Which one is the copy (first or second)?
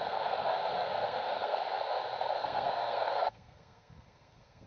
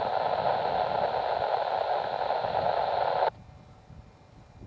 first